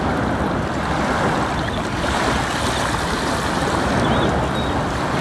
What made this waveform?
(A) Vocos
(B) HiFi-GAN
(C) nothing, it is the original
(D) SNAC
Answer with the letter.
C